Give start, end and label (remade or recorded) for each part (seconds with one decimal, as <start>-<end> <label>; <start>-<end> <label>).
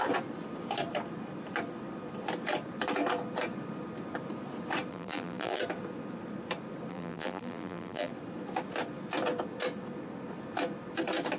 0.0-4.9 recorded; 4.9-5.6 remade; 5.6-6.9 recorded; 6.9-8.1 remade; 8.1-11.4 recorded